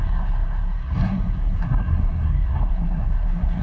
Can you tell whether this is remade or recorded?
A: remade